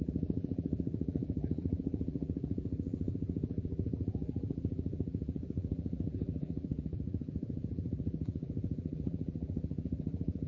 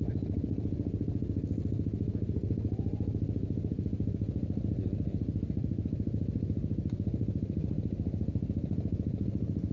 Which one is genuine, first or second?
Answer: second